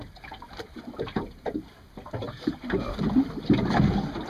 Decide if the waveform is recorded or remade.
recorded